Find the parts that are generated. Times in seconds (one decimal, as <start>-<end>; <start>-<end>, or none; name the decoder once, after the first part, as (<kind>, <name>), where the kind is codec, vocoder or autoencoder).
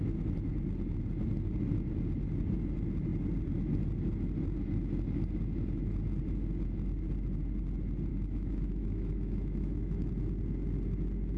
8.1-10.1 (autoencoder, DAC-VAE)